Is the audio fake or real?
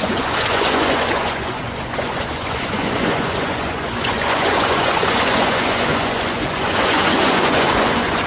fake